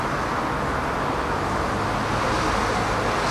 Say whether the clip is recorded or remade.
recorded